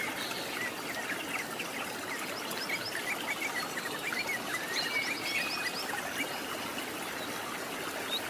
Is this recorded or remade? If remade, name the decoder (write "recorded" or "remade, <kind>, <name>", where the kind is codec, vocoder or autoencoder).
recorded